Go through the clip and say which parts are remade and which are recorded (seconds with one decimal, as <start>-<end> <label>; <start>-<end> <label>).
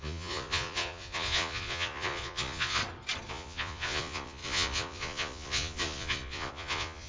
0.0-2.8 remade; 2.8-3.3 recorded; 3.3-7.1 remade